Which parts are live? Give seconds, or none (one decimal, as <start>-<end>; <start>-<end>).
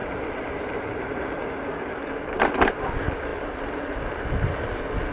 0.0-3.3; 4.2-5.1